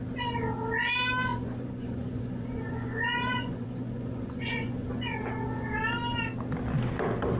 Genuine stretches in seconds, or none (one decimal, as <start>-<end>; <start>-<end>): 0.0-1.3; 5.0-7.4